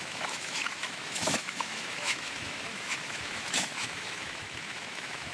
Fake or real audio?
fake